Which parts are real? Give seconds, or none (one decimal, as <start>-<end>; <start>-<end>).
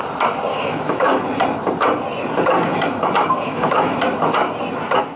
0.0-0.5; 1.2-2.7; 4.0-5.2